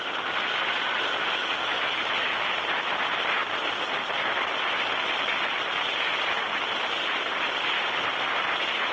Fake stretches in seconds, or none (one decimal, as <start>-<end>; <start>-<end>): 1.4-2.4